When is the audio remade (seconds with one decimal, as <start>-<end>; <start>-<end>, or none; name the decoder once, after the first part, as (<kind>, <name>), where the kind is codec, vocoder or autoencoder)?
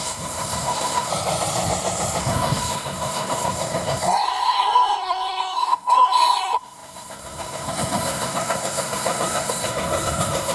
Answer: 0.0-1.1 (codec, SNAC); 2.2-10.5